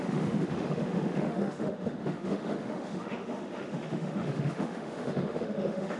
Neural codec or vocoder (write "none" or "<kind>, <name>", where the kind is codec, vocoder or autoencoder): autoencoder, DAC-VAE